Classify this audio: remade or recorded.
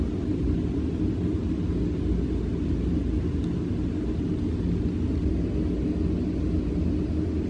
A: recorded